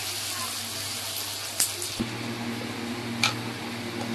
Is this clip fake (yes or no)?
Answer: no